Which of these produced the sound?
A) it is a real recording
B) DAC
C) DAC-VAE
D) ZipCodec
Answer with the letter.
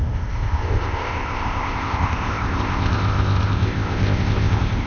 D